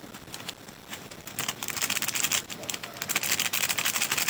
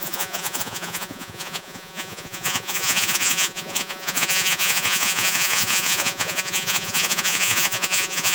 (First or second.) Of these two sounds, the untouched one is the first